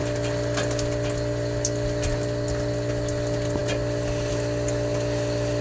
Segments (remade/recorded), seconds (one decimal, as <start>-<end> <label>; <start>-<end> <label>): 0.0-5.6 recorded